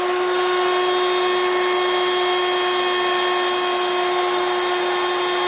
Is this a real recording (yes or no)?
yes